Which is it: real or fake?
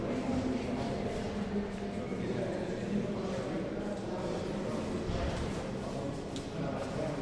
real